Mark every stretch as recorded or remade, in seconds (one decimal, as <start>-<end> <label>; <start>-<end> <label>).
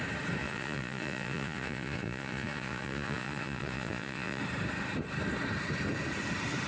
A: 0.0-0.4 recorded; 0.4-4.4 remade; 4.4-6.7 recorded